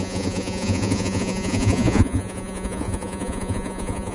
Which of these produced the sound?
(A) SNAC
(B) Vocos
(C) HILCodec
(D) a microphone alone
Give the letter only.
B